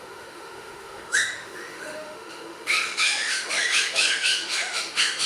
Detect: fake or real fake